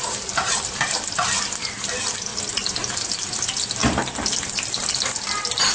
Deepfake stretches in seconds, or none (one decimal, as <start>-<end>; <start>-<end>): 0.0-3.8